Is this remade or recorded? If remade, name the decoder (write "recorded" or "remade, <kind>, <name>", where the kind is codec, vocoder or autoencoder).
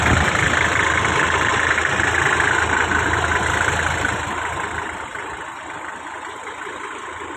recorded